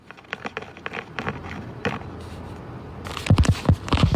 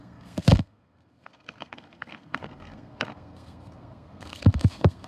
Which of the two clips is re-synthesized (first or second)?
second